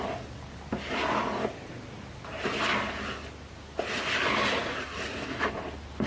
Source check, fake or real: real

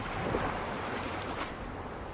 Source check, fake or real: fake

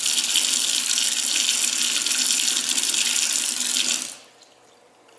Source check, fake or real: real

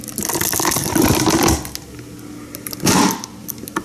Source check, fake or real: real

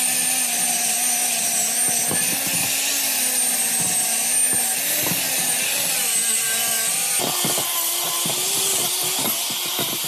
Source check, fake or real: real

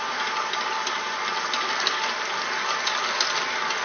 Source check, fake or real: real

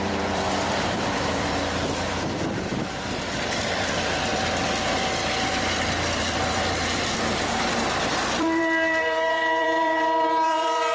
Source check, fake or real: fake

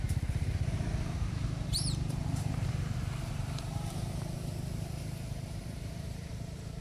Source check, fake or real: fake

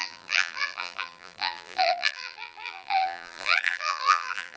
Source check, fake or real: fake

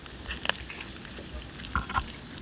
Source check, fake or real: real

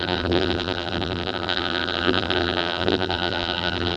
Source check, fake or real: fake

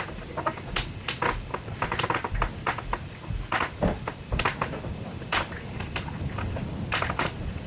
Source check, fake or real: real